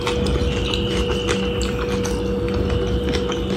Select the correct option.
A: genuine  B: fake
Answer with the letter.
A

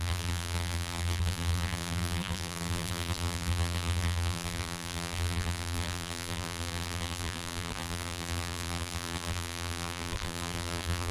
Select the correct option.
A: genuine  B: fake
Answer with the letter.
B